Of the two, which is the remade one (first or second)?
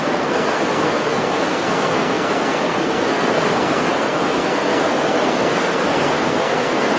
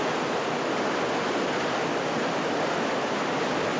first